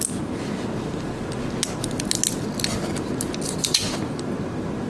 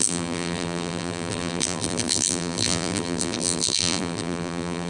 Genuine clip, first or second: first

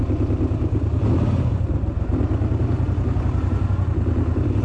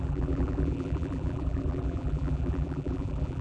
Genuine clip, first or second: first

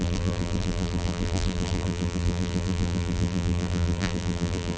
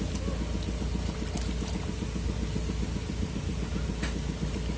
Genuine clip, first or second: second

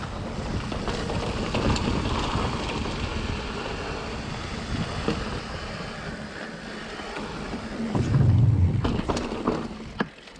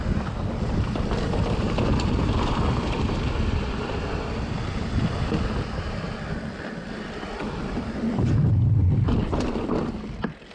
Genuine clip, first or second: first